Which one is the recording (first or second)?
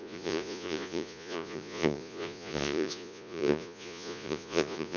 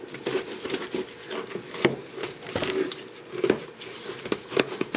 second